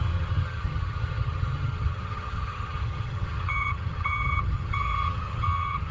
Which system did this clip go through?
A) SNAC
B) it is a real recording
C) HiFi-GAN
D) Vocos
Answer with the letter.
C